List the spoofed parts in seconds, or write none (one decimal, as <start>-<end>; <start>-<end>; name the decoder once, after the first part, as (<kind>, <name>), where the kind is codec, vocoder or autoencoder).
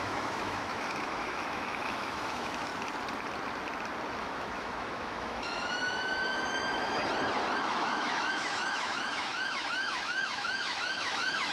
0.0-2.7 (autoencoder, DAC-VAE); 4.2-7.0; 7.6-11.5